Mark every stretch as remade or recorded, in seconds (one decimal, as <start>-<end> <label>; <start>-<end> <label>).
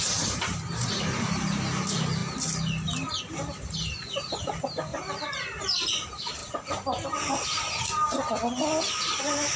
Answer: 0.0-2.2 remade; 2.2-3.2 recorded; 3.2-4.9 remade; 4.9-5.6 recorded; 5.6-6.4 remade; 6.4-9.2 recorded; 9.2-9.6 remade